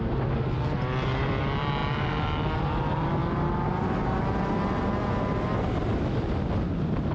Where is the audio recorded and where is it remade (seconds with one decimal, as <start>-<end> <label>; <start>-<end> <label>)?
0.0-7.1 recorded